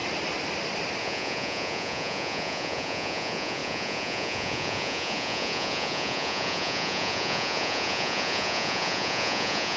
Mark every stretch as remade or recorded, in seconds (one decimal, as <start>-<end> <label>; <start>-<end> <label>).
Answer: 0.0-1.0 recorded; 1.0-9.8 remade